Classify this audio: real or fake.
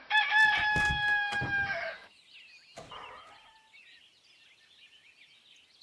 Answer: real